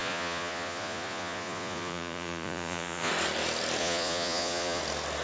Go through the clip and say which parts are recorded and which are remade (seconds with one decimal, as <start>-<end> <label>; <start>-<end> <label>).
0.0-3.1 remade; 3.1-3.8 recorded; 3.8-4.8 remade; 4.8-5.2 recorded